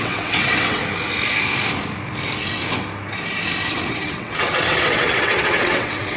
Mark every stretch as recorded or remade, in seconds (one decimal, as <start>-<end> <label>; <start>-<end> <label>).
0.0-0.8 remade; 0.8-3.9 recorded; 3.9-6.2 remade